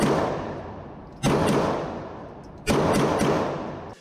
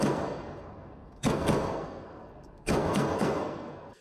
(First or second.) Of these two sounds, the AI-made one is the second